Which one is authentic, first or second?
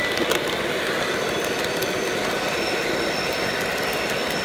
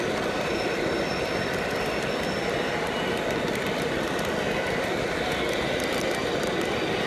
first